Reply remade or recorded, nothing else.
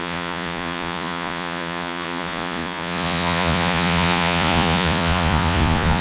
remade